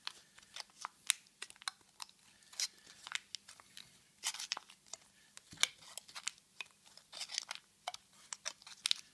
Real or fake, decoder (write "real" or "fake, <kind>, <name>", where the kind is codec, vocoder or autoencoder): real